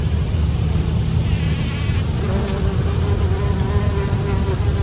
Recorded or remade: recorded